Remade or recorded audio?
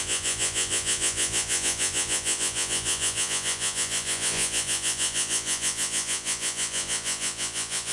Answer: remade